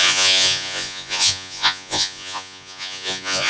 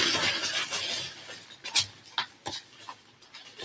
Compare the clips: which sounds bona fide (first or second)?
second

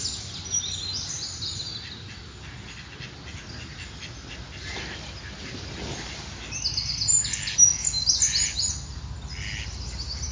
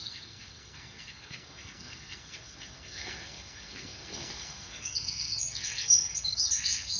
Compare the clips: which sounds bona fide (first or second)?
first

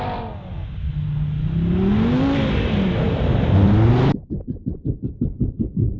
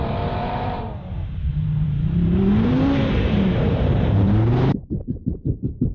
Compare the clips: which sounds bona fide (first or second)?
first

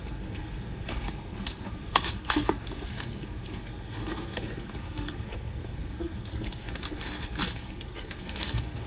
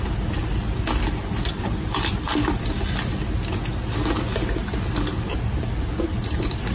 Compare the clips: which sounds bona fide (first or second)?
second